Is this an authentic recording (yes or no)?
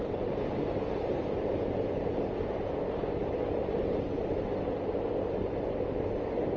yes